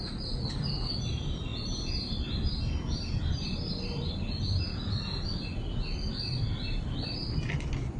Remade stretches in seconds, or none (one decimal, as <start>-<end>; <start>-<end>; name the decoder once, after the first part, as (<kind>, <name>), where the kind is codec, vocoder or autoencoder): none

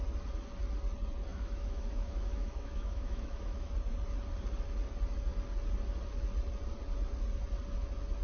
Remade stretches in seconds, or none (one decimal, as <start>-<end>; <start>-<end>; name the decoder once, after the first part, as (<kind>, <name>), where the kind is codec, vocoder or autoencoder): 1.3-3.7 (autoencoder, DAC-VAE)

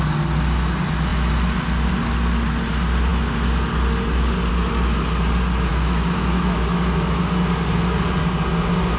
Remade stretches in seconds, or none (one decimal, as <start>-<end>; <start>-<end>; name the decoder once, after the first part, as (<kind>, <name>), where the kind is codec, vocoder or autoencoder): 5.7-7.2 (autoencoder, DAC-VAE)

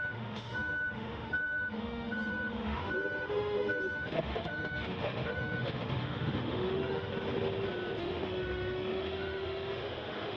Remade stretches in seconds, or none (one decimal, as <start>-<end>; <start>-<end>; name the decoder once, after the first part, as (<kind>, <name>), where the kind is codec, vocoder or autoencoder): 0.0-7.1 (autoencoder, DAC-VAE); 8.0-10.4

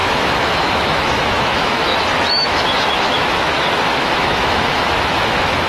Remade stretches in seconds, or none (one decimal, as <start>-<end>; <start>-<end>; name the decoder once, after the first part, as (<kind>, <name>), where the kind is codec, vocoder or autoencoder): 0.0-5.7 (autoencoder, DAC-VAE)

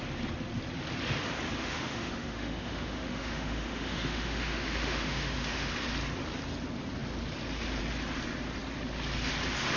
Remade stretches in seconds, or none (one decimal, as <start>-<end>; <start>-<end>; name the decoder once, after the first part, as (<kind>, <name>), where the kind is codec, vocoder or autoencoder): 1.6-5.7 (autoencoder, DAC-VAE)